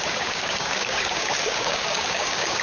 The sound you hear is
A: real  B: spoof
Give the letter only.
B